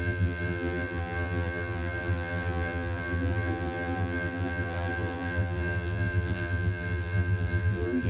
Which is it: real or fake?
fake